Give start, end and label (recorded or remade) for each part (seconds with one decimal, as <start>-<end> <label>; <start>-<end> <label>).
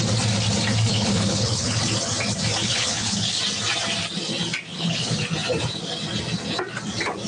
0.0-0.9 recorded; 0.9-1.8 remade; 1.8-2.6 recorded; 2.6-3.4 remade; 3.4-4.7 recorded; 4.7-5.2 remade; 5.2-7.3 recorded